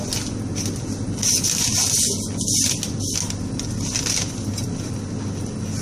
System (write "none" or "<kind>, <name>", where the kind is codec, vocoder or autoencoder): none